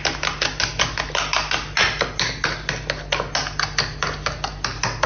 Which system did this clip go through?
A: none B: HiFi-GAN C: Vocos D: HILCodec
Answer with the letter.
A